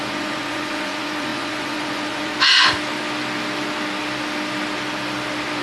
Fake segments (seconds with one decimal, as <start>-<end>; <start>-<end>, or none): 0.0-2.3